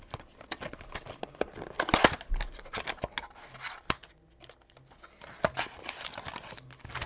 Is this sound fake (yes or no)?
no